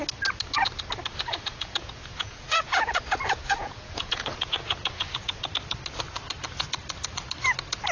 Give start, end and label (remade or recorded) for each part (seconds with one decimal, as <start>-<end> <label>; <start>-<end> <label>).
0.0-1.1 recorded; 1.1-5.5 remade; 5.5-7.9 recorded